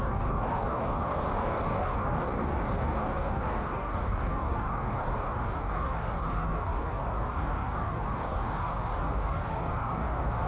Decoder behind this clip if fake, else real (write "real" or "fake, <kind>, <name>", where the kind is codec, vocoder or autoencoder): fake, codec, DAC